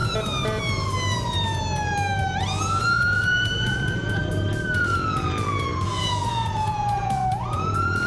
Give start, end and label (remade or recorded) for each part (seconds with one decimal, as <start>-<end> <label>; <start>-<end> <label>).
0.0-2.8 recorded; 2.8-4.2 remade; 4.2-4.8 recorded; 4.8-8.1 remade